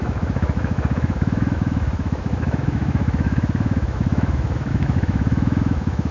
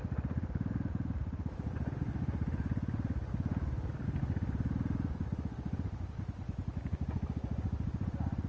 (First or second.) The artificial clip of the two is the first